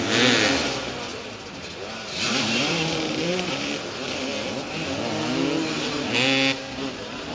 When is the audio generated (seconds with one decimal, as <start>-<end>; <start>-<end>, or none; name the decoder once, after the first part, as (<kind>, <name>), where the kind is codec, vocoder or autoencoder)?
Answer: 1.1-3.7 (vocoder, BigVGAN v2)